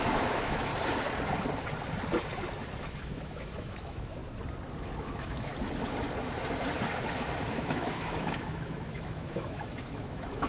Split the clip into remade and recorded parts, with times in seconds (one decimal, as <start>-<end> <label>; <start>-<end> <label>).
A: 0.0-0.7 remade; 0.7-2.8 recorded; 2.8-4.2 remade; 4.2-4.8 recorded; 4.8-5.5 remade; 5.5-7.5 recorded; 7.5-10.5 remade